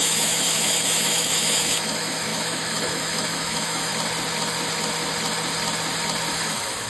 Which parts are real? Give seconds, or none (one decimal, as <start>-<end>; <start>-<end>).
3.9-6.3